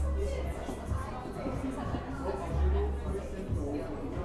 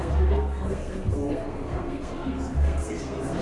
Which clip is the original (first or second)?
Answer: first